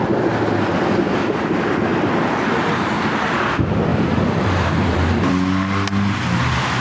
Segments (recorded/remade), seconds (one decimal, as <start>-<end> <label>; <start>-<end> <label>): 0.0-1.9 recorded; 1.9-3.2 remade; 3.2-3.9 recorded; 3.9-5.3 remade; 5.3-6.8 recorded